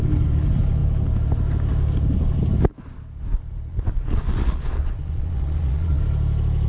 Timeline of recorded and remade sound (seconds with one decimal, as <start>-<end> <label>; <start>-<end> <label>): 0.0-3.7 recorded; 3.7-6.0 remade; 6.0-6.7 recorded